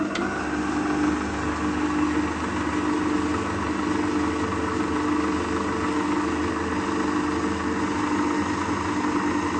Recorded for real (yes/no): yes